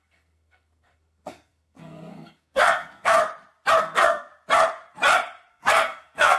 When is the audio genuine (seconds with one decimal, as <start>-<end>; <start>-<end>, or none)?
3.2-3.8; 4.3-5.5